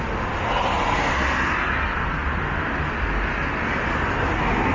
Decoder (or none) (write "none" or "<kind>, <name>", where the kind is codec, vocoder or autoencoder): none